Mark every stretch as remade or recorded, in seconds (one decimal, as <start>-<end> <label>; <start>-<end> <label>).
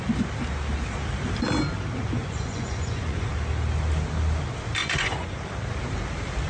0.0-2.2 recorded; 2.2-3.3 remade; 3.3-4.8 recorded; 4.8-5.4 remade; 5.4-6.5 recorded